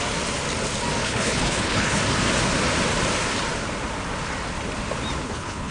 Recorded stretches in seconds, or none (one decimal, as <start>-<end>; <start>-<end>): 0.0-1.0; 2.0-5.2